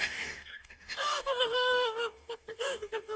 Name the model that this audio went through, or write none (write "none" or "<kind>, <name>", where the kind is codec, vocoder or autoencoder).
codec, DAC